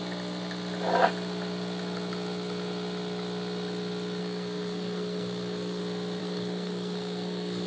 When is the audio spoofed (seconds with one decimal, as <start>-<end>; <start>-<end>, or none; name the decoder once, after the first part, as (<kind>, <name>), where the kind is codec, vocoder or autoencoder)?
4.2-5.8 (codec, SNAC); 6.2-7.7